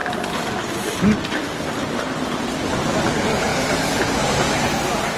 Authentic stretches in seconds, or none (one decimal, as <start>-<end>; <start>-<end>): 0.0-5.2